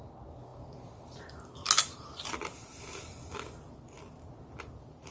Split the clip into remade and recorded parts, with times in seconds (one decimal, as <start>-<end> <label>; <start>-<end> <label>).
0.0-5.1 recorded